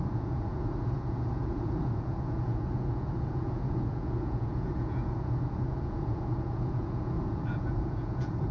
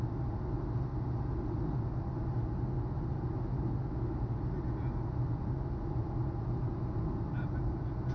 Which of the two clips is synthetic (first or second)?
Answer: first